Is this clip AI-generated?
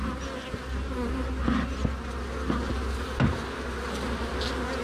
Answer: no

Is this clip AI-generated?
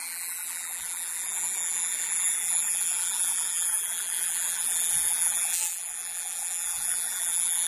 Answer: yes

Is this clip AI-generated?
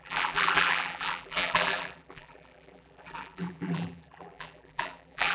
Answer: yes